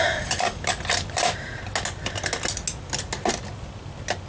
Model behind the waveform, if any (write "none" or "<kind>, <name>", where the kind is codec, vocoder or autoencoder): none